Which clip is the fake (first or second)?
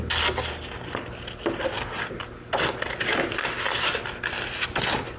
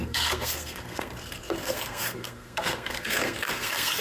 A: second